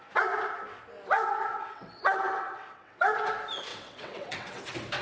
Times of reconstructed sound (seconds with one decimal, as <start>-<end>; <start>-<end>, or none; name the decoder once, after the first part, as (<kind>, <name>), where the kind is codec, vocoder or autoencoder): 1.5-3.2 (vocoder, WaveNeXt); 3.7-4.6